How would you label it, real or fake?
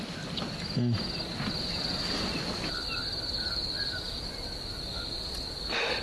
real